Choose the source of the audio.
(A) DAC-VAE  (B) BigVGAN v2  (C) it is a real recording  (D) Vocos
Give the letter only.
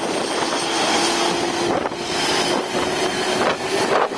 C